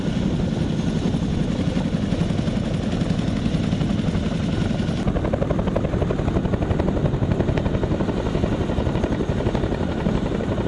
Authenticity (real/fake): real